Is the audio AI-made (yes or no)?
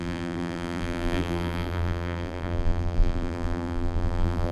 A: yes